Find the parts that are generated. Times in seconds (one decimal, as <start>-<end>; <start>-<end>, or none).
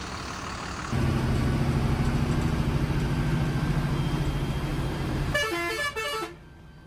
4.7-6.0